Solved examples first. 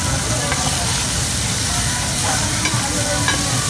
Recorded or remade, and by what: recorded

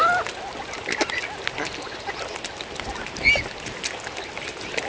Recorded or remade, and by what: recorded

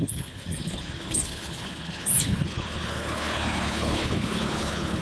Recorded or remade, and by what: remade, codec, HILCodec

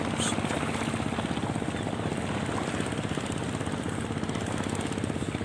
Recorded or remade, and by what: recorded